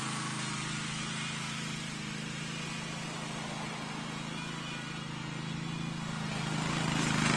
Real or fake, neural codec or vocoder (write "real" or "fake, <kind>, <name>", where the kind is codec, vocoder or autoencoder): real